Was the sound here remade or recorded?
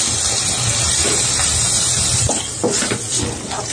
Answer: recorded